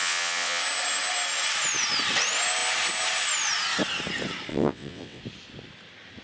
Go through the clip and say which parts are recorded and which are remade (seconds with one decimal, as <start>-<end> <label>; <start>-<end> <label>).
0.0-0.6 remade; 0.6-4.5 recorded; 4.5-5.2 remade; 5.2-6.2 recorded